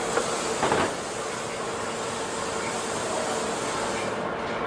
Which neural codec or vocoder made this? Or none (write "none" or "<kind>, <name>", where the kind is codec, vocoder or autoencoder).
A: none